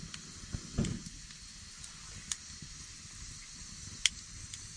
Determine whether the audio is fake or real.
real